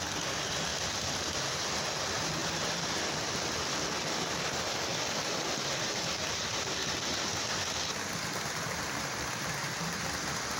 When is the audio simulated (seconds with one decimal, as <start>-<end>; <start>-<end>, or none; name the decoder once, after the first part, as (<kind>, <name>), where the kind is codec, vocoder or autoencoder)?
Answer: 0.7-1.6 (vocoder, BigVGAN v2)